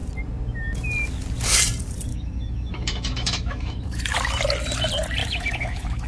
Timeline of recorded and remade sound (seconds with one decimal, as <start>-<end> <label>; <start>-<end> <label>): 0.0-2.1 recorded; 2.1-4.0 remade; 4.0-5.2 recorded; 5.2-6.1 remade